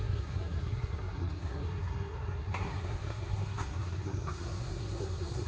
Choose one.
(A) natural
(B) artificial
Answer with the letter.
B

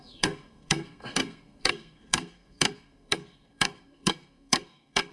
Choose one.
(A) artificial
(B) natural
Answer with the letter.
A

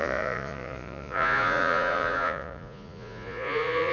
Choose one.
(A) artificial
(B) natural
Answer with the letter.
A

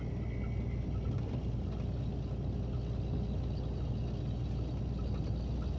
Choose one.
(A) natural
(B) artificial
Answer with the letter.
A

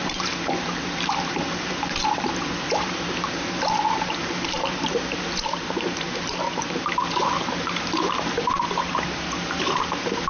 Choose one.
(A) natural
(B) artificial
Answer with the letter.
B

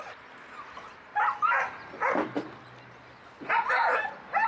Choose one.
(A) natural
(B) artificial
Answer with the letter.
A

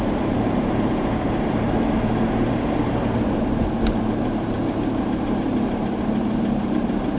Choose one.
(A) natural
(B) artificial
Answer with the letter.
B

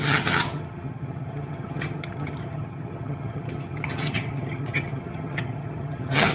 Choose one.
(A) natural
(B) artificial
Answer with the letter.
B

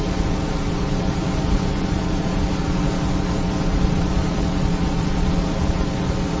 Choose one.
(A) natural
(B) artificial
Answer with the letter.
B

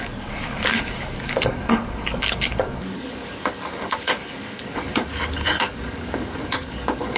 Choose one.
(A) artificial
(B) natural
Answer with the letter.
A